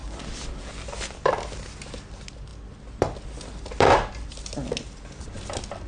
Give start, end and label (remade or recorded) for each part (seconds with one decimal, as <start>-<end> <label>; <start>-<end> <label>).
0.0-5.9 recorded